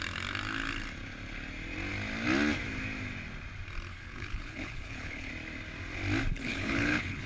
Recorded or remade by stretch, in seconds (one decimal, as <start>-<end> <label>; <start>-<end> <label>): 0.0-3.9 recorded; 3.9-5.3 remade; 5.3-6.3 recorded; 6.3-7.3 remade